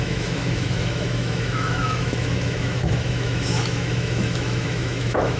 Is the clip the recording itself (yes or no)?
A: no